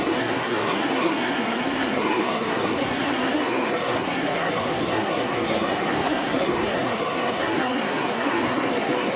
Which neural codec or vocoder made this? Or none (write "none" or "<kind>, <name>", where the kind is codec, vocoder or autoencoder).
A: codec, SNAC